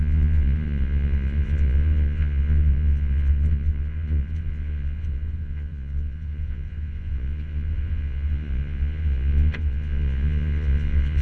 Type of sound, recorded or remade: remade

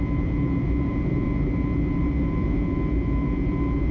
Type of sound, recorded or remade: remade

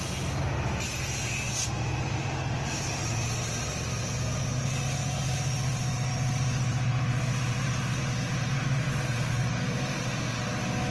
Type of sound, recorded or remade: recorded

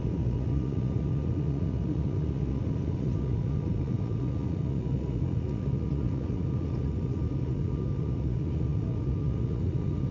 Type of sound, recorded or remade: remade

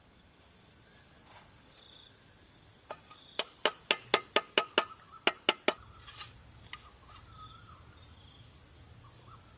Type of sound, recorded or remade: recorded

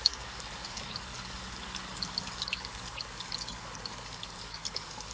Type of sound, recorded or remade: remade